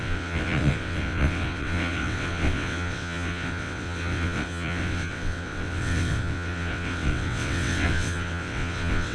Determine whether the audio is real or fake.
fake